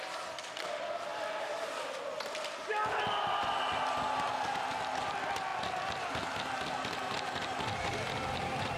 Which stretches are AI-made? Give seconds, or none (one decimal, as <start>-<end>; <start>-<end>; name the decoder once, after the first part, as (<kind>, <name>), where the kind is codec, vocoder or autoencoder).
none